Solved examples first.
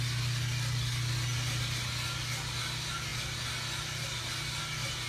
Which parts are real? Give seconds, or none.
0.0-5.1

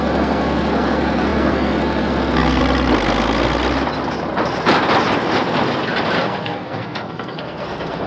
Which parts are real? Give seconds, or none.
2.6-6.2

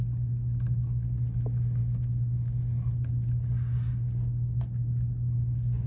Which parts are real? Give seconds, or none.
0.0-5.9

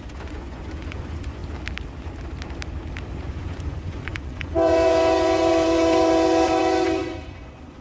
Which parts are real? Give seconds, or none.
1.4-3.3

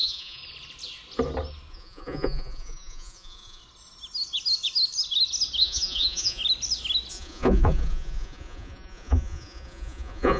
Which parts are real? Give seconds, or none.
0.4-1.7; 3.6-5.6; 6.4-7.1